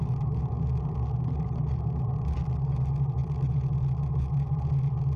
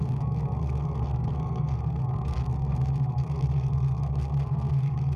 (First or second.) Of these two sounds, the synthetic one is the second